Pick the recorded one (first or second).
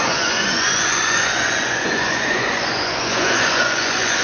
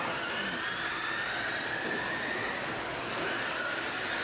second